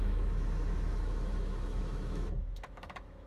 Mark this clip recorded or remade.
remade